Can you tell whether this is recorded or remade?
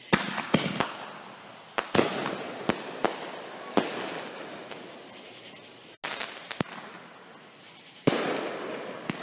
recorded